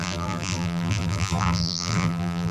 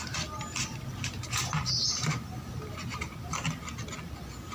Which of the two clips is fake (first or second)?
first